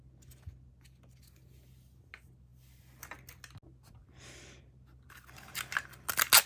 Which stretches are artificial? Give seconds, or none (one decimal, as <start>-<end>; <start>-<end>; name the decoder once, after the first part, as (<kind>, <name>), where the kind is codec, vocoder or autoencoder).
none

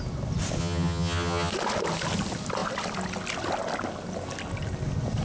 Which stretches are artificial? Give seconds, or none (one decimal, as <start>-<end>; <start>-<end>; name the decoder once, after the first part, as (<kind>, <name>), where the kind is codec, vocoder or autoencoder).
0.6-1.5 (vocoder, HiFi-GAN)

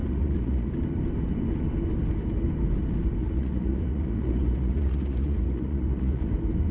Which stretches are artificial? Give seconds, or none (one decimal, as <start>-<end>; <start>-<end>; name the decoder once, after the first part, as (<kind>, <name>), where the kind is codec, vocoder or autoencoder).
0.0-0.7 (vocoder, Vocos); 3.2-6.2

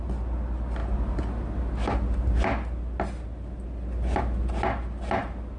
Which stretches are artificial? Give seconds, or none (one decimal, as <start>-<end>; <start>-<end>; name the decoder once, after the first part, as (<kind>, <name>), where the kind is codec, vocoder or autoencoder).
none